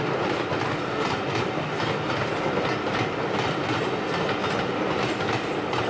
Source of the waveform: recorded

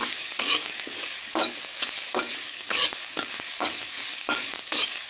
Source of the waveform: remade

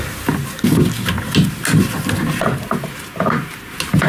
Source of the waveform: recorded